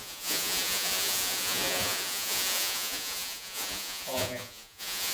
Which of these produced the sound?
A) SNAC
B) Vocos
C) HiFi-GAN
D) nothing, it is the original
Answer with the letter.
B